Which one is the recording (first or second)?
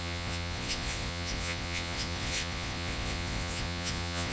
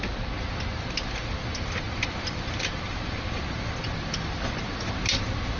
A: second